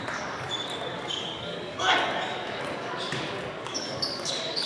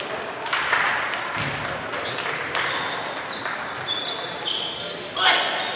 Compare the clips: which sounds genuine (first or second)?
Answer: second